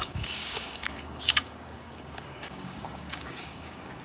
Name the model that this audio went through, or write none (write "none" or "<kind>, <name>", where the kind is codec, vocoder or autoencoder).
codec, DAC